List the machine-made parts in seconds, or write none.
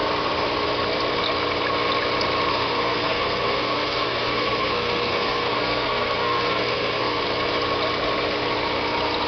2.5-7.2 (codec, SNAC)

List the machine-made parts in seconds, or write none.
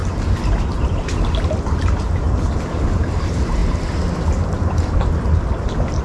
none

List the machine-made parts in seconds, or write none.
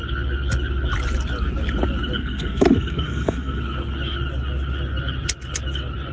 2.2-3.6 (codec, SNAC)